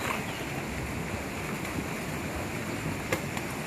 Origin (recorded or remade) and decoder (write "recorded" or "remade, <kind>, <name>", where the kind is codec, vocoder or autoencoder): recorded